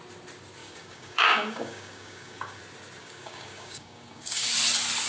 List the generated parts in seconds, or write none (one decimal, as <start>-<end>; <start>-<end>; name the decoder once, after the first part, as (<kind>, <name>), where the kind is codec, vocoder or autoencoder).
0.6-2.6 (codec, DAC); 3.0-4.5